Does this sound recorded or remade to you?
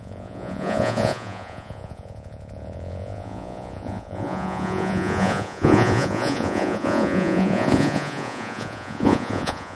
remade